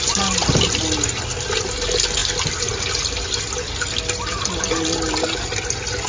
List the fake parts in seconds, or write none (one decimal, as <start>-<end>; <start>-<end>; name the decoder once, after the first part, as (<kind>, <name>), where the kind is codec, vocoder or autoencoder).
none